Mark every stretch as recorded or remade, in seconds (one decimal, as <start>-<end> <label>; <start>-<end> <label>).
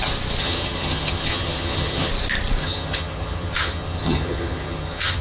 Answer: 0.0-0.4 recorded; 0.4-2.1 remade; 2.1-2.6 recorded; 2.6-5.2 remade